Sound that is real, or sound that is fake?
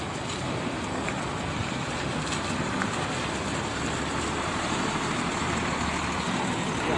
real